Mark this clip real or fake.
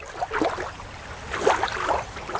real